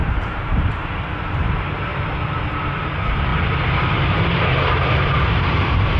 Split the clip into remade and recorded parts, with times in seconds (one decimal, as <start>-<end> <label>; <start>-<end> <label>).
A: 0.0-1.9 remade; 1.9-2.5 recorded; 2.5-6.0 remade